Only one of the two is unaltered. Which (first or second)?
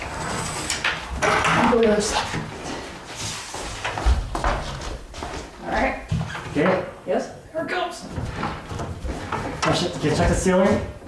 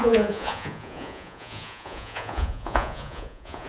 first